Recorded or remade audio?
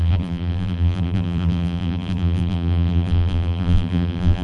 remade